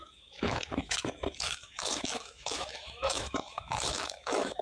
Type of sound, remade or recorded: remade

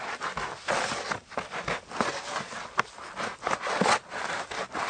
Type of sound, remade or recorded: recorded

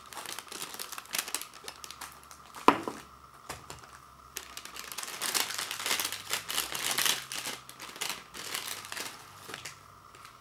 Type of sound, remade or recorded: recorded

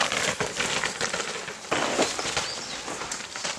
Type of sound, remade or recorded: remade